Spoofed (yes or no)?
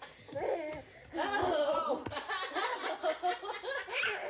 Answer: no